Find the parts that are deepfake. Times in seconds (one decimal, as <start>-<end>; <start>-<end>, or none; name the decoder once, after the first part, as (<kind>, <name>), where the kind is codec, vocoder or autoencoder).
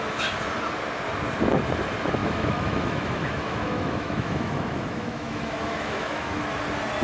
2.2-6.4 (autoencoder, DAC-VAE)